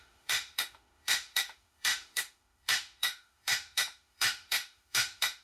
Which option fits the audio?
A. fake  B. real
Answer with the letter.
A